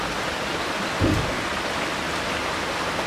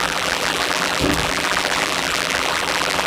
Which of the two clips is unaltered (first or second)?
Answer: first